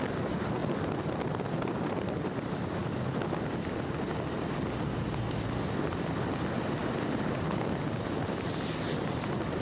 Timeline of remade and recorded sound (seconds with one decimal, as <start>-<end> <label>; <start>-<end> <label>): 0.0-9.6 recorded